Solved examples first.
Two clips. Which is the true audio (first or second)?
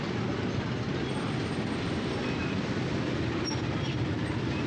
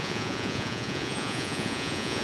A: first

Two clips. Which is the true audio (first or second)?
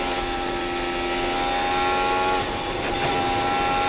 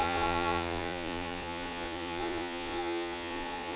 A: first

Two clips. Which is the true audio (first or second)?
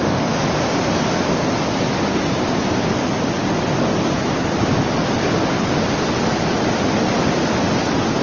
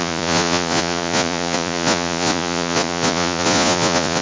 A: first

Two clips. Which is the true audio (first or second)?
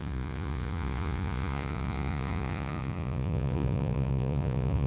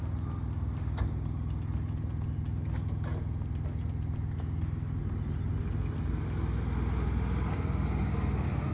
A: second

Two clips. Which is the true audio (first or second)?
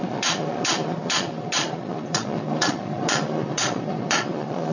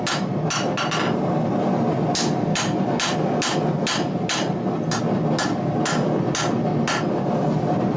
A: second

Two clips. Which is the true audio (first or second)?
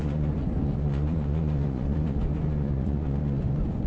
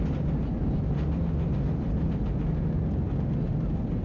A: second